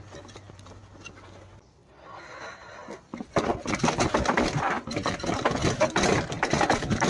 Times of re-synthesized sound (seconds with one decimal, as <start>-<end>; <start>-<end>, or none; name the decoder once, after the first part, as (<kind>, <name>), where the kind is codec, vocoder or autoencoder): none